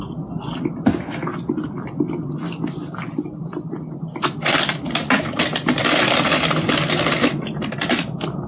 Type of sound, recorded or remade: recorded